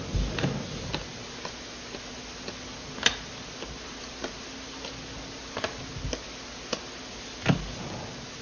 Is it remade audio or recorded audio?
recorded